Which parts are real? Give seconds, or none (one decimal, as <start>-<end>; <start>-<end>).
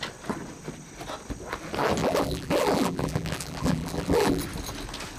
0.0-2.0; 4.4-5.2